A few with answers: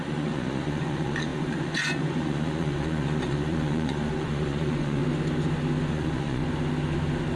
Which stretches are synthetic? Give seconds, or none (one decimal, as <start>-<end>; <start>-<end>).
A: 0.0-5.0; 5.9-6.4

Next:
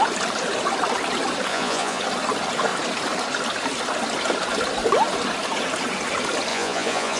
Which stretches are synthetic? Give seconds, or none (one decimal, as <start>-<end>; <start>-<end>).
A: 1.5-2.0; 6.5-7.2

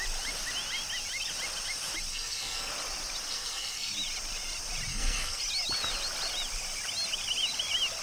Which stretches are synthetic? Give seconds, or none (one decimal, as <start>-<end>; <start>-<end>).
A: 2.1-2.7; 3.3-3.9; 4.9-5.4